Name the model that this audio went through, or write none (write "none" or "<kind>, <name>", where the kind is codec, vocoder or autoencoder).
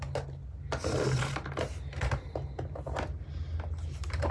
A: none